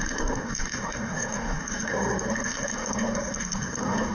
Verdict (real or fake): fake